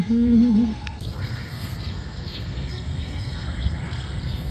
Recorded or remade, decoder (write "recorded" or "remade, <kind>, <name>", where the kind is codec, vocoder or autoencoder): remade, codec, SNAC